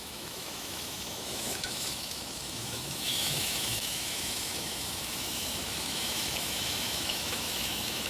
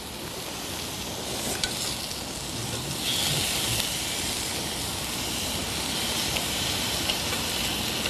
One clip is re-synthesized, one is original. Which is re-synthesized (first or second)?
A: first